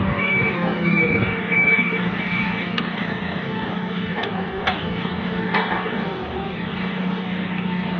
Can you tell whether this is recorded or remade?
remade